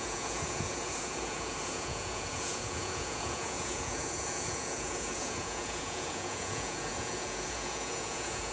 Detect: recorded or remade remade